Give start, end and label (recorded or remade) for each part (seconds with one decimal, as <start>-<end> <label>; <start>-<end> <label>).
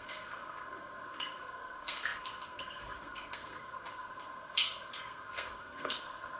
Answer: 0.0-6.4 remade